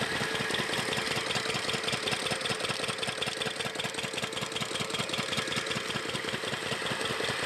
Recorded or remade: recorded